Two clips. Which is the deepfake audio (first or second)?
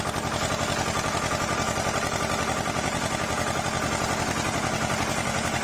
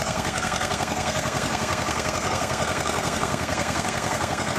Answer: second